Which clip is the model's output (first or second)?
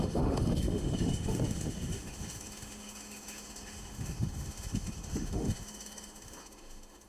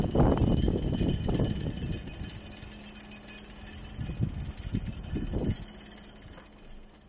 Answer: first